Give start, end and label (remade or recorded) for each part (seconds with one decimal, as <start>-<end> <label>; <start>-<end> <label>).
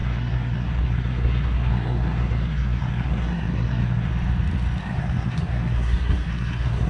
0.0-4.1 remade; 4.1-4.8 recorded; 4.8-6.9 remade